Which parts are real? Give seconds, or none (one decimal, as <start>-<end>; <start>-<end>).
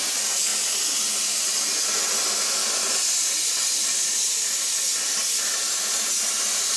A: 0.0-6.8